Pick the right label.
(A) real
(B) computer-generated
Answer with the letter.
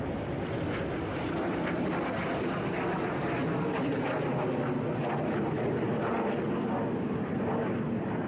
A